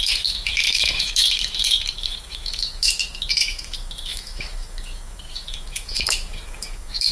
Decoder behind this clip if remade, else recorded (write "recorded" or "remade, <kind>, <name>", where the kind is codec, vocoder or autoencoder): remade, autoencoder, DAC-VAE